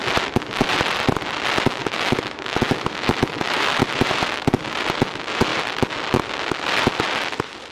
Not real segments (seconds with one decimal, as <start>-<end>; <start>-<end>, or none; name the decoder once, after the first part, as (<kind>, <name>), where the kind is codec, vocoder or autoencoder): 1.8-3.8 (autoencoder, DAC-VAE)